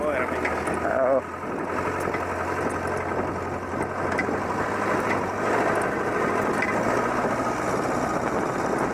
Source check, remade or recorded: recorded